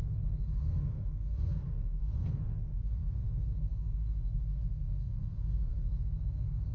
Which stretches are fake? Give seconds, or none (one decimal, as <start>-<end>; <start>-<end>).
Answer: 0.0-6.7